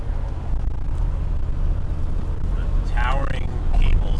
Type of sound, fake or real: real